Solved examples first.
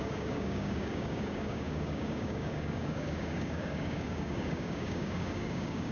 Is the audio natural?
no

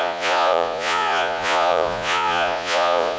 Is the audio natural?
no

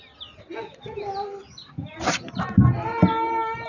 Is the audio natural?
yes